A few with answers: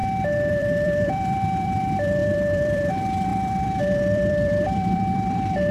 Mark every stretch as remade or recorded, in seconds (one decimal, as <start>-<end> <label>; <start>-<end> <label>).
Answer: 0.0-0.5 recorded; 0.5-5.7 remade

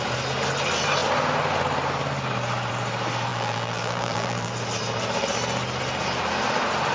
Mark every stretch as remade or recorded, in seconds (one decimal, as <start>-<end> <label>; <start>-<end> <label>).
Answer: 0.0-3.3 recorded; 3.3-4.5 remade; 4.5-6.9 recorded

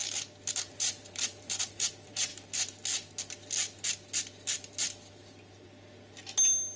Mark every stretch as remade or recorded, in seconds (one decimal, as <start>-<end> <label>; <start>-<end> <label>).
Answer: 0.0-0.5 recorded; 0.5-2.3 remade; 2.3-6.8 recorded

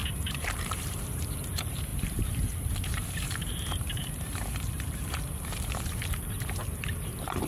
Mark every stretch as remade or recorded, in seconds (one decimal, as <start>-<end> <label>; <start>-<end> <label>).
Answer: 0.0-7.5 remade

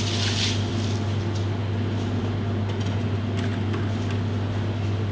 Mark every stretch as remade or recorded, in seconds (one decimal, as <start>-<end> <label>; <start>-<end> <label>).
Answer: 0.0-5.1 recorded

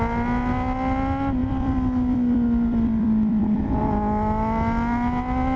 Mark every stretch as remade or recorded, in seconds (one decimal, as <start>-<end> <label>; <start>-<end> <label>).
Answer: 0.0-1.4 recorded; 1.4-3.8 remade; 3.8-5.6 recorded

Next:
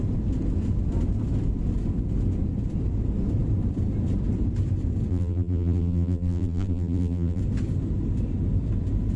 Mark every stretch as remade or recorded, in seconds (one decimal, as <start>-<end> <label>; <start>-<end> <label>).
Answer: 0.0-5.1 recorded; 5.1-7.4 remade; 7.4-9.2 recorded

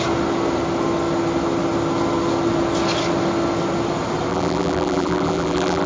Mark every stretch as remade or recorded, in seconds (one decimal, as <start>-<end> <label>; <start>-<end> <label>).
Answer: 0.0-4.3 recorded; 4.3-5.9 remade